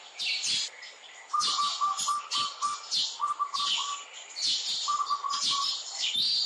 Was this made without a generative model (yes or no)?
yes